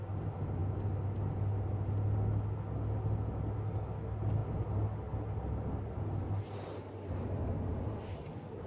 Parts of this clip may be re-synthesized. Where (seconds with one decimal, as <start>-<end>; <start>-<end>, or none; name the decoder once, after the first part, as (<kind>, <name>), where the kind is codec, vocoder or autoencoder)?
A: none